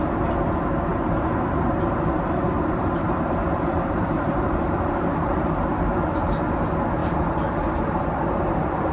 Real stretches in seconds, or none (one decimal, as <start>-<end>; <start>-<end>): 0.0-0.9; 5.7-7.0